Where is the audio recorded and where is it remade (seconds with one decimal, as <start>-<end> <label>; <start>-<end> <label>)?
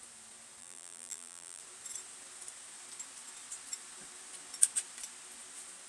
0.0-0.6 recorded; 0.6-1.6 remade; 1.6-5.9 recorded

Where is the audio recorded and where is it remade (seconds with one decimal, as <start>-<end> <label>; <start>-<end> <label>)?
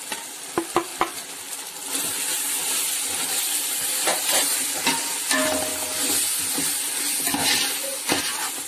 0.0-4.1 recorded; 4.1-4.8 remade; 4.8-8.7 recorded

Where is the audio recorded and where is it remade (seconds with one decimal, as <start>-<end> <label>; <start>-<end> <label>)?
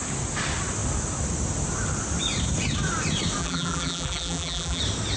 0.0-3.4 recorded; 3.4-4.8 remade; 4.8-5.2 recorded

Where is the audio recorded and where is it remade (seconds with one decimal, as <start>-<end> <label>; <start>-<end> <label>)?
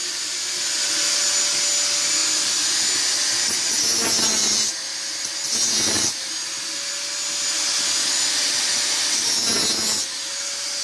0.0-1.1 remade; 1.1-10.8 recorded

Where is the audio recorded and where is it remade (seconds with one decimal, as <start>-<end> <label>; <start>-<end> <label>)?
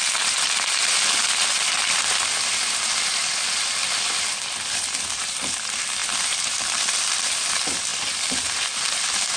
0.0-9.4 recorded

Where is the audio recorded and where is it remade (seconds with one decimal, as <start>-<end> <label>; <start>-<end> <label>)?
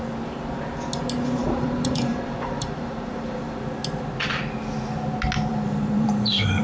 0.0-1.4 recorded; 1.4-3.6 remade; 3.6-5.5 recorded; 5.5-6.6 remade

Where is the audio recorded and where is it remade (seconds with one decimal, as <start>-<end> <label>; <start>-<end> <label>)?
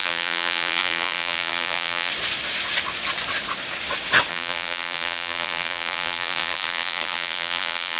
0.0-2.1 remade; 2.1-4.3 recorded; 4.3-8.0 remade